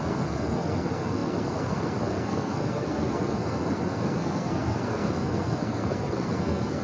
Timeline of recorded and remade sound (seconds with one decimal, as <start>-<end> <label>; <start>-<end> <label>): 0.0-6.8 remade